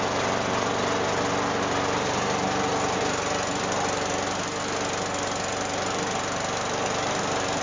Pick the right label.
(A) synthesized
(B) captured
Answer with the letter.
B